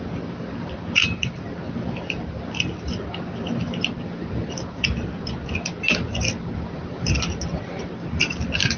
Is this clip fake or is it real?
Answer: real